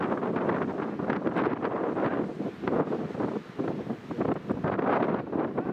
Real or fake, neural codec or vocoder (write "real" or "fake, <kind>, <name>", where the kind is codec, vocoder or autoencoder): real